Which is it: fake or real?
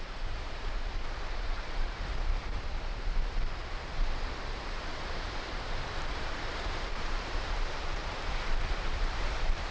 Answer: fake